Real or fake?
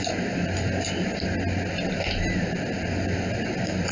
real